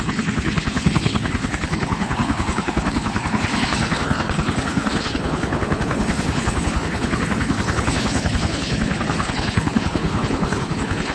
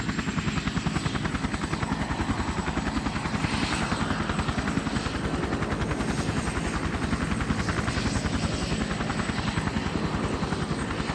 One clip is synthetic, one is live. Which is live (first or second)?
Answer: second